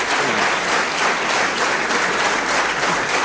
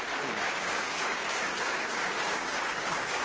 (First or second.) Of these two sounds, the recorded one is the first